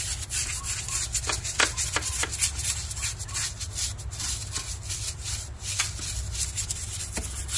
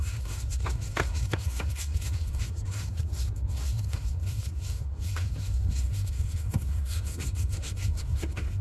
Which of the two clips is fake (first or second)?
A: second